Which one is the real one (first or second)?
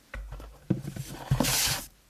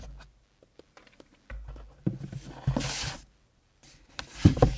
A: second